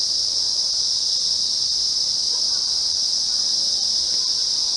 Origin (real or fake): real